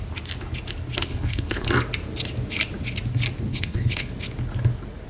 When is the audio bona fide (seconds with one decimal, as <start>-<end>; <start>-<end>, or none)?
0.0-1.1; 1.7-3.5; 4.1-5.1